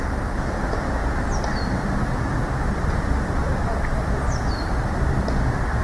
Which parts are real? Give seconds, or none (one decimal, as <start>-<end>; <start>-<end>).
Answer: 1.0-4.5